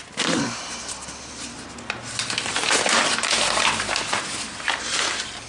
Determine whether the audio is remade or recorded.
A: recorded